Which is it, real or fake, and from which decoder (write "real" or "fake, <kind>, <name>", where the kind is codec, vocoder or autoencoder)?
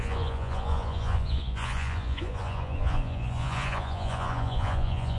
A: fake, vocoder, Vocos